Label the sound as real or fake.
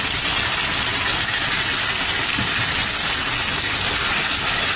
real